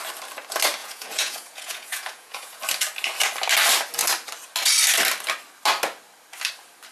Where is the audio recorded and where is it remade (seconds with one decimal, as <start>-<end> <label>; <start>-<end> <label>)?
0.0-0.8 recorded; 0.8-2.6 remade; 2.6-6.9 recorded